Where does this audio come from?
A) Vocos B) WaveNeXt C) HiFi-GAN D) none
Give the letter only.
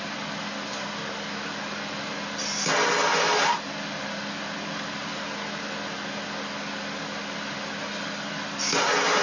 D